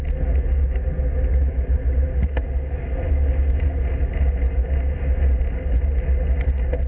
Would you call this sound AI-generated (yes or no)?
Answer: no